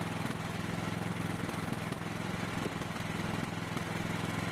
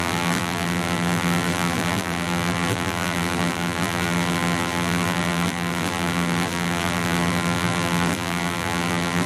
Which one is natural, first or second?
first